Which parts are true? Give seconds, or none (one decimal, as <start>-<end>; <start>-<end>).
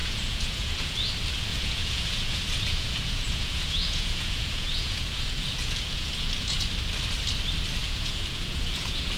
1.1-1.5; 6.7-7.8